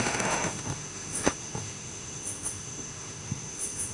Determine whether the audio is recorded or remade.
remade